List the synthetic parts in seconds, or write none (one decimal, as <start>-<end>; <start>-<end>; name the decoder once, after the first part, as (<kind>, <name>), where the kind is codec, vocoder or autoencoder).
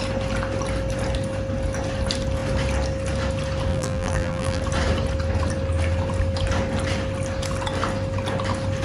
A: 3.7-4.6 (vocoder, BigVGAN v2)